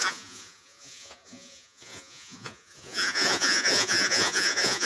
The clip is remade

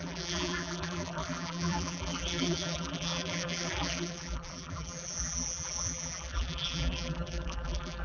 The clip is remade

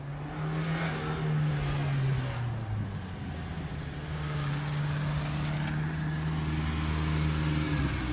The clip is recorded